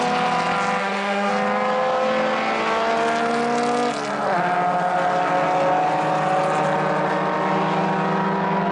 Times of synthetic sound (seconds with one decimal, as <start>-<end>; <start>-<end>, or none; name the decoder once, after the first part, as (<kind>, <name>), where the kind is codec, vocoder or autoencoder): 0.8-1.3 (autoencoder, DAC-VAE)